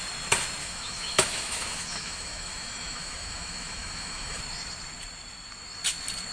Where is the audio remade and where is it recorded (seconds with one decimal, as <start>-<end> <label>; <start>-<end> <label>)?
0.0-0.6 recorded; 0.6-4.4 remade; 4.4-6.3 recorded